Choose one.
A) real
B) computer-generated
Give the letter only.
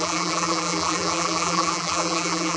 B